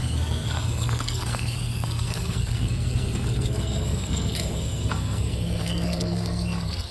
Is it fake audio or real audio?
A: fake